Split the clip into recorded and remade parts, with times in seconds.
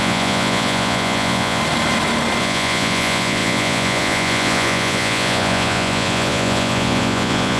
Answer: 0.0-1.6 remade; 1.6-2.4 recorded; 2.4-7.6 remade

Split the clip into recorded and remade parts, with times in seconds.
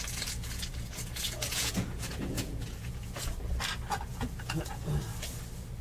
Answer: 0.0-3.5 remade; 3.5-4.1 recorded; 4.1-5.0 remade; 5.0-5.8 recorded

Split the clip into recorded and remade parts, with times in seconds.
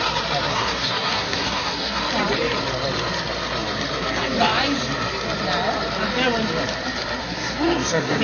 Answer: 0.0-0.5 recorded; 0.5-2.0 remade; 2.0-7.2 recorded; 7.2-8.2 remade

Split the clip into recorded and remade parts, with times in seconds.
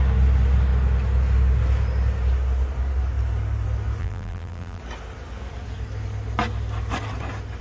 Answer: 0.0-4.0 recorded; 4.0-4.8 remade; 4.8-7.6 recorded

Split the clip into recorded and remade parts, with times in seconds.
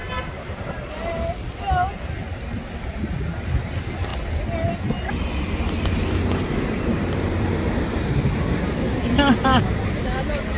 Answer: 0.0-0.9 remade; 0.9-6.9 recorded; 6.9-10.6 remade